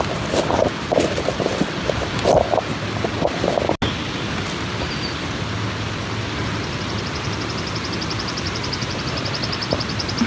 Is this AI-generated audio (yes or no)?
no